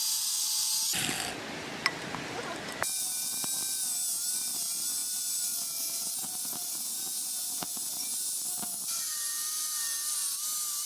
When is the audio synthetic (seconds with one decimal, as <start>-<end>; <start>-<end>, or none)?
none